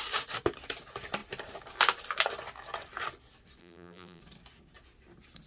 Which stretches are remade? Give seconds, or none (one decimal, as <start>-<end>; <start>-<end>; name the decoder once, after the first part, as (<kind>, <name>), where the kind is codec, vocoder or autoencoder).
3.6-4.2 (vocoder, BigVGAN v2)